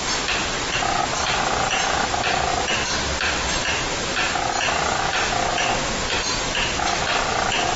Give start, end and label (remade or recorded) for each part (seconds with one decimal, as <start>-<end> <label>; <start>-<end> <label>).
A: 0.0-7.8 recorded